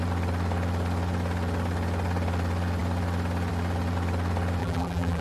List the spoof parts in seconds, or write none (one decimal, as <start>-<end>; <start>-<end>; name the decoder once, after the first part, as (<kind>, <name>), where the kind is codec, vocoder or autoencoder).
4.6-5.2 (vocoder, BigVGAN v2)